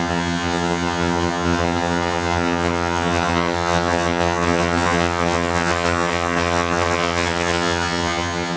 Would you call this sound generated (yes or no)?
yes